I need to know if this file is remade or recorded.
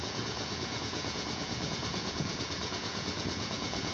remade